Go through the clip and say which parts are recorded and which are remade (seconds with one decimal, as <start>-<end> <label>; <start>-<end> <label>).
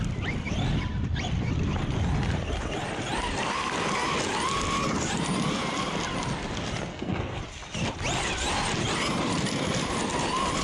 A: 0.0-6.9 recorded; 6.9-7.4 remade; 7.4-10.6 recorded